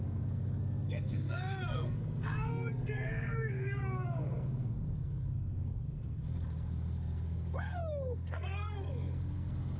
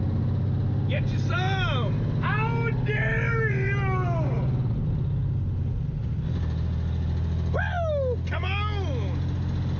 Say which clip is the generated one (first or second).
first